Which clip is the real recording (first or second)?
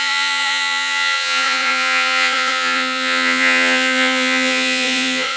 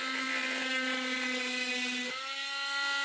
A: second